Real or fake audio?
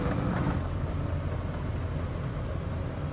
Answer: real